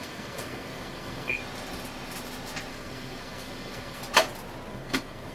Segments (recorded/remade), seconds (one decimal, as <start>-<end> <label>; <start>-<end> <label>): 0.0-1.4 remade; 1.4-2.7 recorded; 2.7-4.0 remade; 4.0-4.7 recorded; 4.7-5.3 remade